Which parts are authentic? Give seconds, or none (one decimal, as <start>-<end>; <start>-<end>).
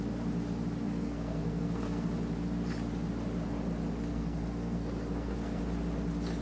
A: 0.0-0.8; 2.1-4.1; 5.6-6.4